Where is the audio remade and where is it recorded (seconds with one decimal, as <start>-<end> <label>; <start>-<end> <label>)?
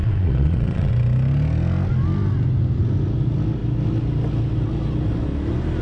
0.0-0.9 remade; 0.9-5.8 recorded